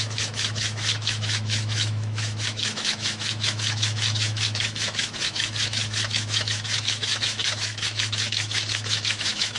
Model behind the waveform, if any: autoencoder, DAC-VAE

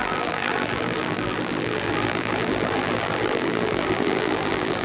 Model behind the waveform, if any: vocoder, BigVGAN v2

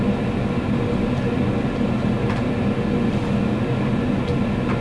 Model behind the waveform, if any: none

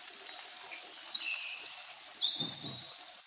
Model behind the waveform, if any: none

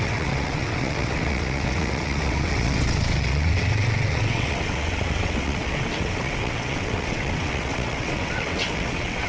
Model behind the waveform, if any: vocoder, WaveNeXt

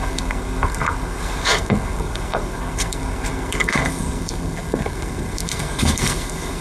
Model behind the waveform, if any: codec, SNAC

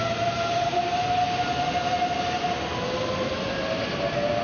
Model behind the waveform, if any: none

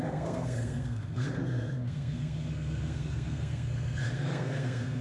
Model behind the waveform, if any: codec, SNAC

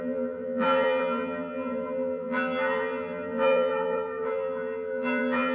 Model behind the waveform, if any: vocoder, BigVGAN v2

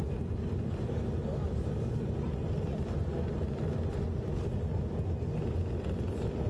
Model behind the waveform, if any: none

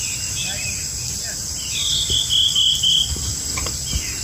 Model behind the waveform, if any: none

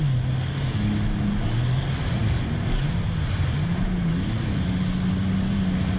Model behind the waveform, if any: none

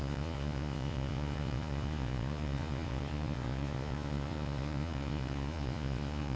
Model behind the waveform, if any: vocoder, Vocos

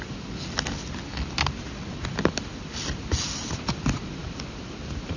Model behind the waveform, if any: none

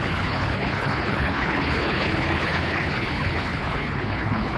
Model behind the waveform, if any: codec, HILCodec